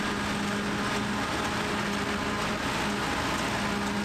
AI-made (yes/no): no